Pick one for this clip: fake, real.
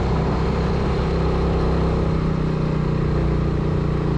real